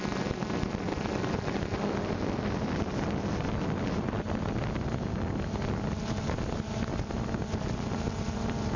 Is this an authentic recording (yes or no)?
yes